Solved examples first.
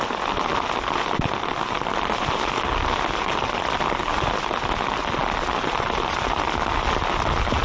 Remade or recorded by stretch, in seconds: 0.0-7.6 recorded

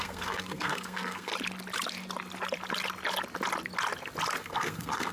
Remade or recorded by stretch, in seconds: 0.0-1.3 remade; 1.3-4.4 recorded; 4.4-5.1 remade